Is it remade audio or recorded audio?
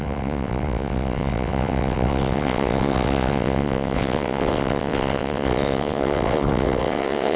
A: remade